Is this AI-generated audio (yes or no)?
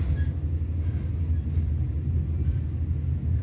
no